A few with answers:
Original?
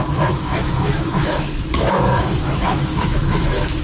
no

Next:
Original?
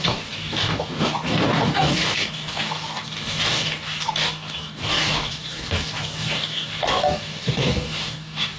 no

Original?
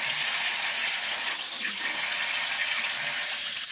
yes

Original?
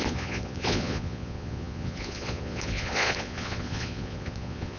no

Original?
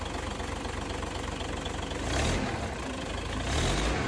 yes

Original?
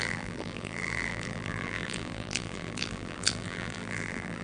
no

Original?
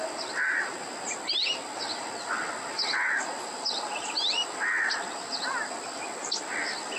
yes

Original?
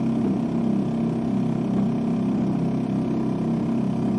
yes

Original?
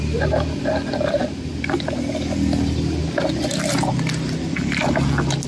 yes